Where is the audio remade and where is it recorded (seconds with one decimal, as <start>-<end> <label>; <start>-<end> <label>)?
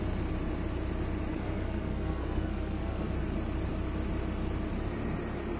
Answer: 0.0-1.3 recorded; 1.3-3.1 remade; 3.1-5.6 recorded